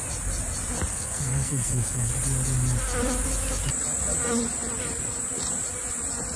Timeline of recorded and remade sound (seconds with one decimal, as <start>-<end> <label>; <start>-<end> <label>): 0.0-0.9 recorded; 0.9-2.1 remade; 2.1-6.4 recorded